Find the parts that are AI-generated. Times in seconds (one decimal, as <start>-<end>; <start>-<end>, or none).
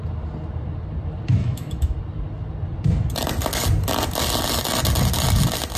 1.4-2.0